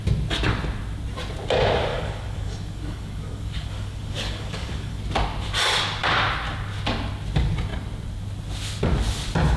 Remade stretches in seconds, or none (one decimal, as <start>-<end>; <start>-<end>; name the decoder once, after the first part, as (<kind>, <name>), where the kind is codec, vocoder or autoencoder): 1.9-5.0 (codec, DAC)